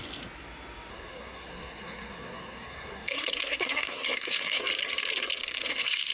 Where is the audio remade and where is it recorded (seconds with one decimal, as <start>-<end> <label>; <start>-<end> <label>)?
0.0-0.9 recorded; 0.9-4.6 remade; 4.6-5.4 recorded; 5.4-6.1 remade